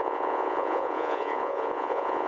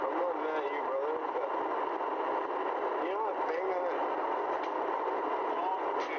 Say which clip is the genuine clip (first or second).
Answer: second